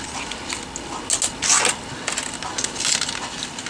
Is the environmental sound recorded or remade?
recorded